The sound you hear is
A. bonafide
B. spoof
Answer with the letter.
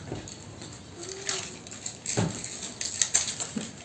A